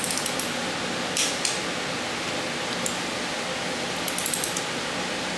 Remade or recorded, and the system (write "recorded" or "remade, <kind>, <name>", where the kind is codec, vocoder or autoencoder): recorded